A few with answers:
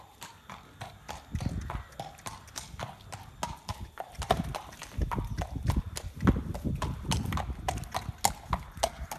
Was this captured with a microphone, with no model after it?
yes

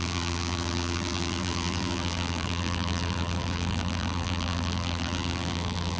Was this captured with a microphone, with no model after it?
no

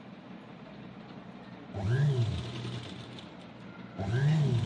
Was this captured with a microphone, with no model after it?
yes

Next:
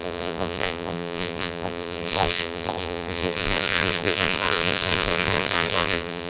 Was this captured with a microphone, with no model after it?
no